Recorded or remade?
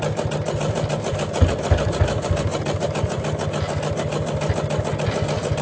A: recorded